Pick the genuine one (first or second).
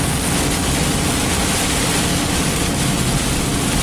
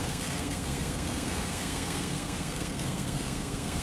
first